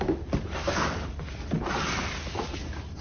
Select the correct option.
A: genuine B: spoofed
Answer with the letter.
A